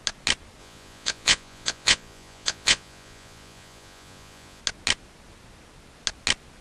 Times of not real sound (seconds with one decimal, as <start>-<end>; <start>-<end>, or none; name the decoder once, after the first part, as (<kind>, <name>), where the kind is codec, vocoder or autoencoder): 0.6-4.6 (vocoder, Vocos)